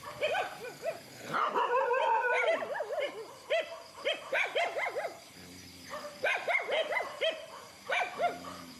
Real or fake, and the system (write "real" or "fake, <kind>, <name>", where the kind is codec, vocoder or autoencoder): fake, vocoder, BigVGAN v2